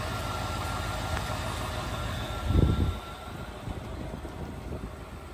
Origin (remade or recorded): recorded